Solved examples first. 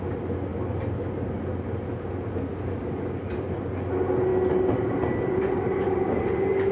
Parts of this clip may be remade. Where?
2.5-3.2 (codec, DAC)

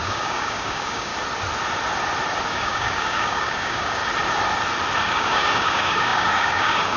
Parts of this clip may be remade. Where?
0.0-1.1 (codec, DAC); 2.5-4.0; 5.0-7.0

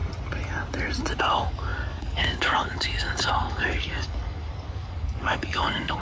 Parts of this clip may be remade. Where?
1.2-6.0 (codec, DAC)